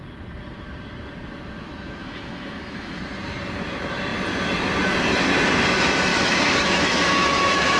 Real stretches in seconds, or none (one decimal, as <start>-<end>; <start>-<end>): 0.0-2.0; 3.0-6.1